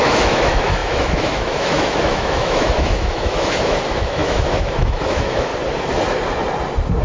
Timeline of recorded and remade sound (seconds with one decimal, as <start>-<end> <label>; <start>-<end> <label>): 0.0-5.5 remade; 5.5-7.0 recorded